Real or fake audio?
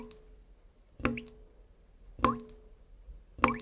real